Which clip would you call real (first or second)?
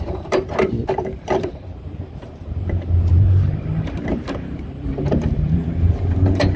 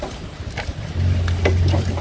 second